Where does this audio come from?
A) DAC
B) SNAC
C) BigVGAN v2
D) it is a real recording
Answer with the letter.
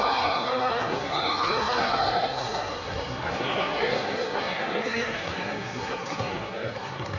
B